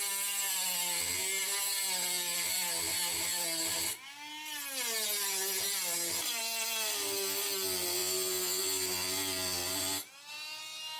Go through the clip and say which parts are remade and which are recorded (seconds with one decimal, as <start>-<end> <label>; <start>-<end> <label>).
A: 0.0-11.0 recorded